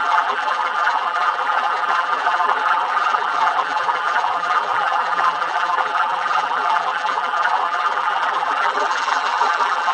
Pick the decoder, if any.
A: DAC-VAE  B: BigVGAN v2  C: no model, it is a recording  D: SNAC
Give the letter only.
B